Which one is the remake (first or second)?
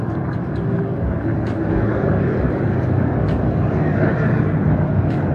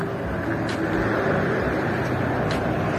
first